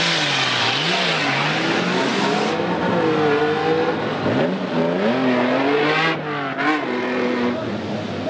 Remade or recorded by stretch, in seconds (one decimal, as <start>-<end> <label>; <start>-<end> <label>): 0.0-8.3 recorded